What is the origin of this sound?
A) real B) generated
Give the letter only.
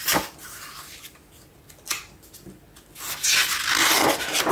A